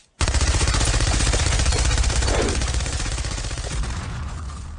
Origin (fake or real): fake